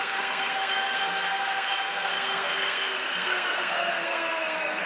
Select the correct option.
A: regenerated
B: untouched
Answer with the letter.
A